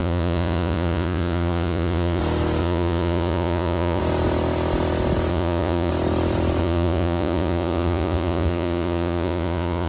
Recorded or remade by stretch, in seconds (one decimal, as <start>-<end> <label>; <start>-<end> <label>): 0.0-2.2 remade; 2.2-2.6 recorded; 2.6-4.0 remade; 4.0-5.3 recorded; 5.3-5.9 remade; 5.9-6.6 recorded; 6.6-9.9 remade